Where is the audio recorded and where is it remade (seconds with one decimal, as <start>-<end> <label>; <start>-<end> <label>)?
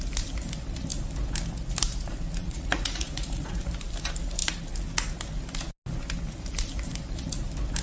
0.0-2.4 recorded; 2.4-3.7 remade; 3.7-7.8 recorded